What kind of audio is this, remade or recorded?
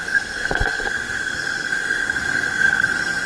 remade